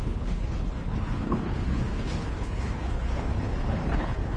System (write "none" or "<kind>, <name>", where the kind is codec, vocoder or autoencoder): codec, HILCodec